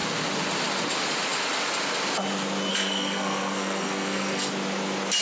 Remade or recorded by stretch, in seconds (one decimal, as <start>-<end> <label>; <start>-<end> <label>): 0.0-2.7 recorded; 2.7-4.5 remade; 4.5-5.2 recorded